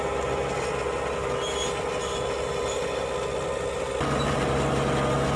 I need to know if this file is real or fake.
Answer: real